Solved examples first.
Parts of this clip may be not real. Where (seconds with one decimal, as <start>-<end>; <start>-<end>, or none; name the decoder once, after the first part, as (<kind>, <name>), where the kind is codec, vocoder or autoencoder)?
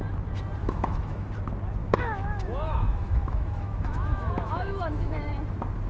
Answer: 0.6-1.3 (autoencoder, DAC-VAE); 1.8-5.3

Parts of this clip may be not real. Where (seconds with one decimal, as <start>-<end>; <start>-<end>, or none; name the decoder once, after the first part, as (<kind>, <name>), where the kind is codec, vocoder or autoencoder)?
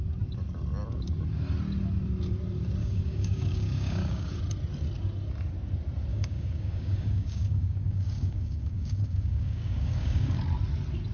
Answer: 2.8-4.4 (codec, DAC); 6.1-10.4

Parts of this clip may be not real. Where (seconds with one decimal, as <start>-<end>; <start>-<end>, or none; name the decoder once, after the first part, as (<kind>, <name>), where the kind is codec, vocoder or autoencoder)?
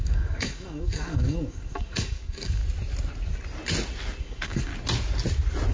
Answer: 0.0-2.6 (codec, DAC); 4.2-4.7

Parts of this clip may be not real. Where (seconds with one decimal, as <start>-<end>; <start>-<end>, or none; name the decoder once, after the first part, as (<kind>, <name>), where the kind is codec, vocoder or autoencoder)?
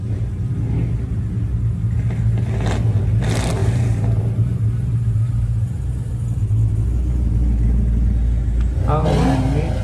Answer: 3.6-6.7 (vocoder, BigVGAN v2)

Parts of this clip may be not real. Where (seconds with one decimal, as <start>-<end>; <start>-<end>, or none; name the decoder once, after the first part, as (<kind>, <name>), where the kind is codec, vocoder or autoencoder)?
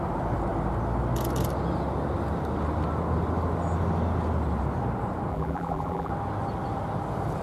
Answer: 5.3-6.1 (vocoder, BigVGAN v2)